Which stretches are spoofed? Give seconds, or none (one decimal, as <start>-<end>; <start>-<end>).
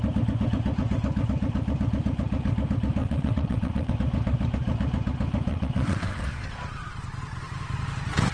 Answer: 3.0-3.9; 5.5-6.2